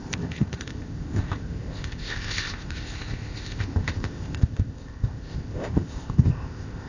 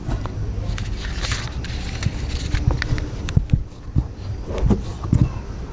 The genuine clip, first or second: second